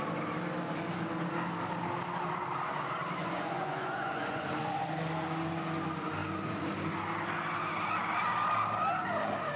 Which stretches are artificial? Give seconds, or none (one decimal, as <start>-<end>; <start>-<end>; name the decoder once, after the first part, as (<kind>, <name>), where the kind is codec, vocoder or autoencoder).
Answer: 3.2-4.5 (vocoder, Vocos)